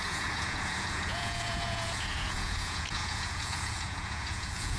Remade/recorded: remade